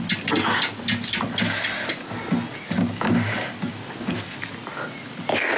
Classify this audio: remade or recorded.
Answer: recorded